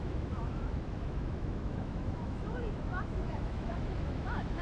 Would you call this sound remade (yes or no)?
yes